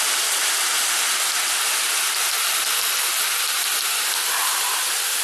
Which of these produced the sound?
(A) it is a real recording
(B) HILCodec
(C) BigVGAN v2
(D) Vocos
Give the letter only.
A